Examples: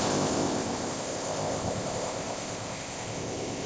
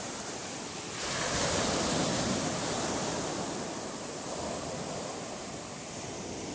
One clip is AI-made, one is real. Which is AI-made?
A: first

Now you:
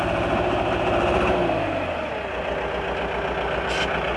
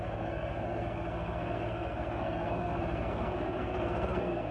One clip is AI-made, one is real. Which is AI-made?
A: second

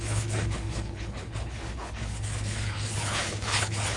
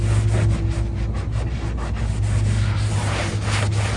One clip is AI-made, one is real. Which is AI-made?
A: first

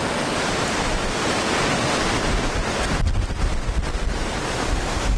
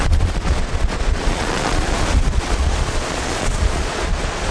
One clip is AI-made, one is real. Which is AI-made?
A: second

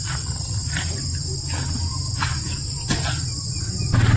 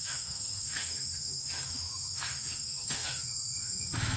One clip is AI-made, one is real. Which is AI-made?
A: second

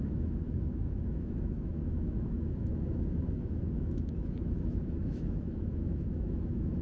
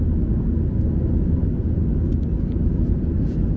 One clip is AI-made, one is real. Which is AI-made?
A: first